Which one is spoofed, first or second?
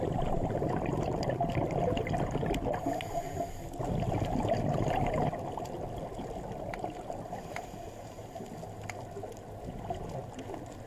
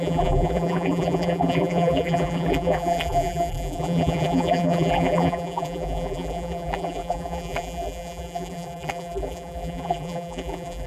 second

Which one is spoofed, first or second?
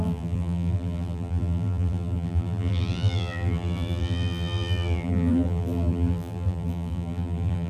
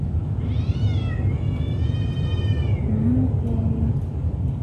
first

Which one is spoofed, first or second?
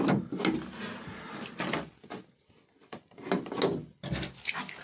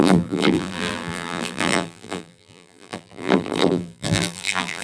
second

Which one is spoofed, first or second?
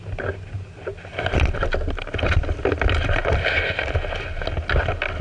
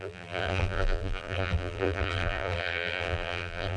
second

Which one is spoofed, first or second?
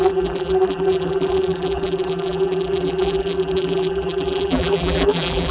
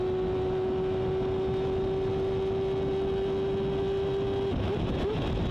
first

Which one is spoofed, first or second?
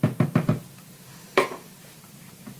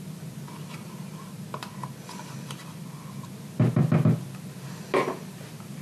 first